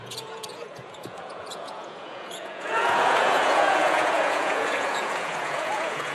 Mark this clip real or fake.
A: fake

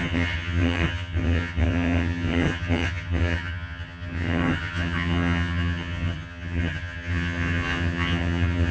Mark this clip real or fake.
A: fake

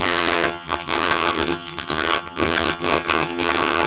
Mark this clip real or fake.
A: fake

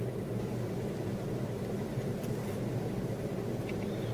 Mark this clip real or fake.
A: real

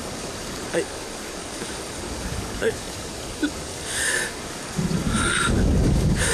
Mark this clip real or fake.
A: fake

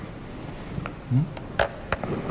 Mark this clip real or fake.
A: real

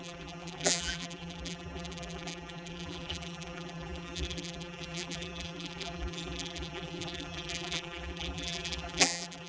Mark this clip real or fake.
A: fake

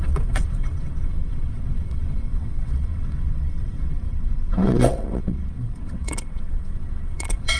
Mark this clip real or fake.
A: fake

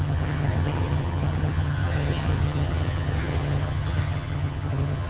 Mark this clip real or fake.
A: fake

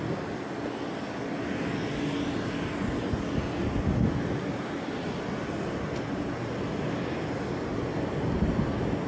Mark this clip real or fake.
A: real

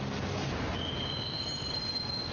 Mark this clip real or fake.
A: real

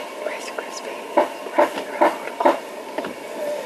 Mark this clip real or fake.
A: fake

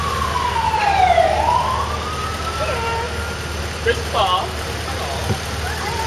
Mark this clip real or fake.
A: real